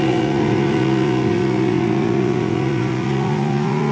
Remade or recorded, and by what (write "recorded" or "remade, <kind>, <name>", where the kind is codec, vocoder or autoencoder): remade, vocoder, Vocos